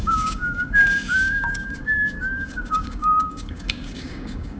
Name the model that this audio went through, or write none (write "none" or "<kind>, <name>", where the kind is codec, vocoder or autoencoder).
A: codec, DAC